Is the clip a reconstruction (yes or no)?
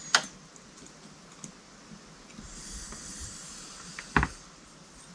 no